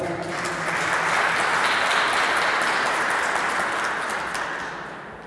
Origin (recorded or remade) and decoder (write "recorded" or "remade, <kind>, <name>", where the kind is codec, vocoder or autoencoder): recorded